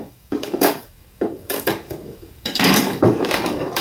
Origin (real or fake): fake